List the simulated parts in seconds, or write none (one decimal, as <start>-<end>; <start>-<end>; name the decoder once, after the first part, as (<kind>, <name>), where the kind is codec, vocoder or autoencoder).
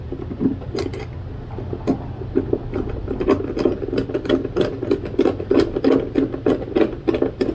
none